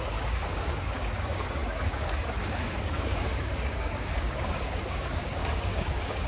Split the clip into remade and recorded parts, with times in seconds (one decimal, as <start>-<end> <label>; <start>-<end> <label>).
0.0-6.3 remade